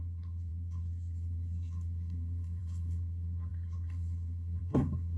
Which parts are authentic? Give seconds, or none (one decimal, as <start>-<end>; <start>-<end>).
none